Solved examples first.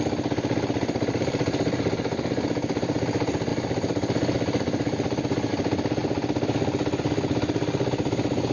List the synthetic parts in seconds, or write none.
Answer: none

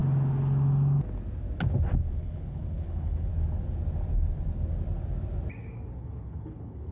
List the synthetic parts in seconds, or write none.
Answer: 2.2-3.3 (codec, HILCodec); 5.9-6.9